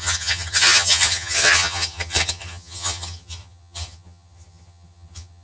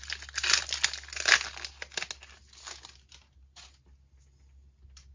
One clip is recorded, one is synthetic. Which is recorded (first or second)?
second